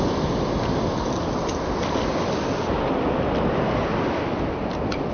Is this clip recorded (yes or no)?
yes